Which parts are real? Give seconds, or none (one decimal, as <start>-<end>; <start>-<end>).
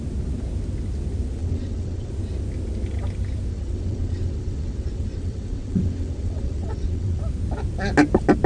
0.0-1.4; 2.1-3.5; 7.2-8.5